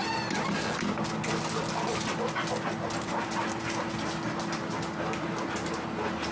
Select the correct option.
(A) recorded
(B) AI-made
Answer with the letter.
A